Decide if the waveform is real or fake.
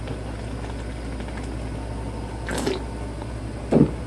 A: real